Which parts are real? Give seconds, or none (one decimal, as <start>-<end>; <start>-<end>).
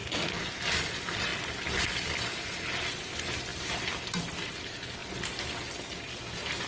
0.9-1.3; 2.6-6.7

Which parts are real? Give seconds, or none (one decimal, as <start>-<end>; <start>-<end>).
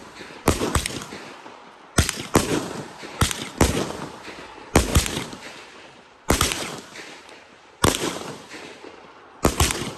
0.6-2.5; 3.3-4.9; 9.0-10.0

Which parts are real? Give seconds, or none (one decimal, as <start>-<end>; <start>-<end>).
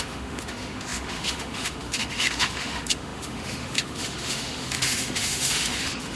none